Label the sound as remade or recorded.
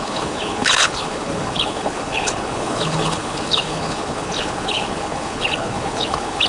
remade